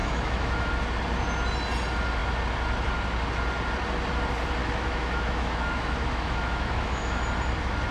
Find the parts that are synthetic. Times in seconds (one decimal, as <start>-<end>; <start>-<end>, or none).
0.0-0.7; 4.6-7.2